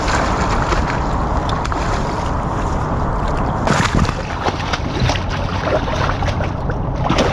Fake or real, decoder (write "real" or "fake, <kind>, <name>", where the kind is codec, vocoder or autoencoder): real